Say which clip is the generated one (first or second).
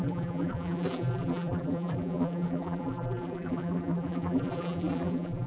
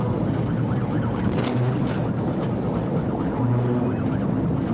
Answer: first